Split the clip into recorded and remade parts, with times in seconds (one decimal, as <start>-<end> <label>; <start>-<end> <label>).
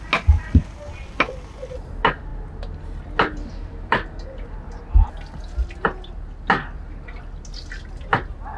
0.0-8.6 recorded